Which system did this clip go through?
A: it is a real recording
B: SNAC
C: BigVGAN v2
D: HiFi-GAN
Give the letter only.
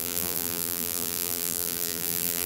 C